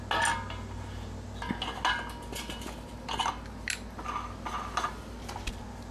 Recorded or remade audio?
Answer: recorded